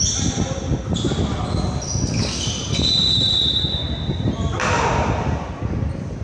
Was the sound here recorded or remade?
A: recorded